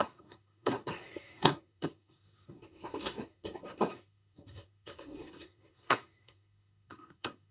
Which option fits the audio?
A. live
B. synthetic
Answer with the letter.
B